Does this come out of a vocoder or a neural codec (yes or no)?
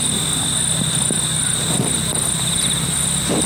no